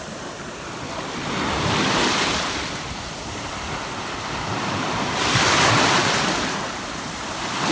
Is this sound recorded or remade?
remade